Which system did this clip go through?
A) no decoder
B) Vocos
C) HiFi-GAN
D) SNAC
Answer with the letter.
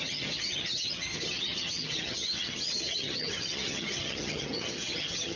C